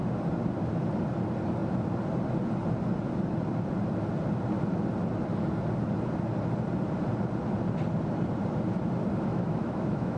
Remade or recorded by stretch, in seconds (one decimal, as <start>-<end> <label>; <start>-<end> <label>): 0.0-9.3 recorded; 9.3-10.2 remade